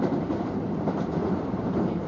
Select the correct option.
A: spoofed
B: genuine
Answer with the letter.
A